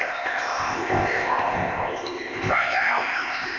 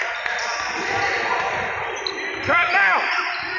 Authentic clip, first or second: second